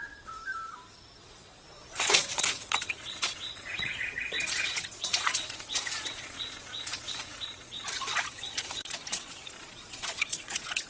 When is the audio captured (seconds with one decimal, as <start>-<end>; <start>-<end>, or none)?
0.4-1.2